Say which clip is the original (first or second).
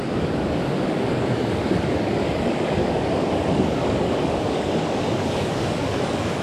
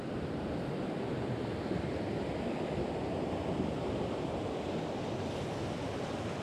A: second